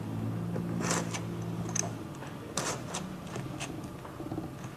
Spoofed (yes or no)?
no